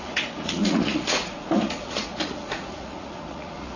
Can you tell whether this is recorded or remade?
remade